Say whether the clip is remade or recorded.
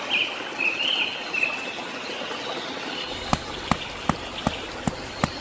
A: recorded